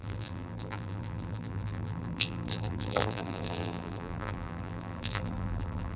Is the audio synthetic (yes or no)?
yes